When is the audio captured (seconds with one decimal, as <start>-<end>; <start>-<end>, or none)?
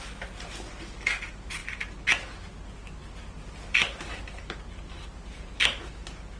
0.0-6.4